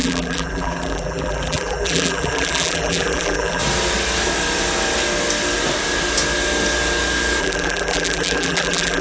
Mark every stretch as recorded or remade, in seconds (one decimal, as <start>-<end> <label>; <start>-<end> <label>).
0.0-3.6 remade; 3.6-7.4 recorded; 7.4-9.0 remade